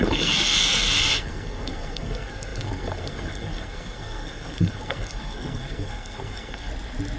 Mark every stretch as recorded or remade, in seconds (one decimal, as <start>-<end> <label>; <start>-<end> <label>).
0.0-6.7 remade; 6.7-7.2 recorded